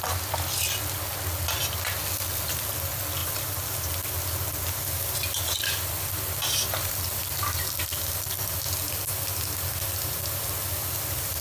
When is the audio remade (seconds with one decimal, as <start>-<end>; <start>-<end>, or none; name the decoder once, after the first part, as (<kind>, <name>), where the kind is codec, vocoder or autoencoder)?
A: none

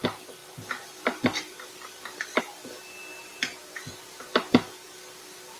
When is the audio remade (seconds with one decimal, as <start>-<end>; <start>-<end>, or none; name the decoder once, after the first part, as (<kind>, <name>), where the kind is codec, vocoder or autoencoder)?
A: 0.4-2.4 (vocoder, BigVGAN v2); 3.3-5.6